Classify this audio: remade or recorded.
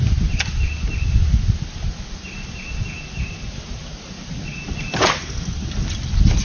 recorded